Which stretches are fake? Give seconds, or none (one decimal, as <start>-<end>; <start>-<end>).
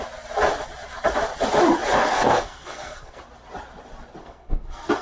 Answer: 2.0-3.2; 4.2-5.0